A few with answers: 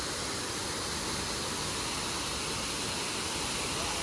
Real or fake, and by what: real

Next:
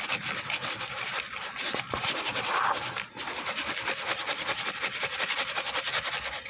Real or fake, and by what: real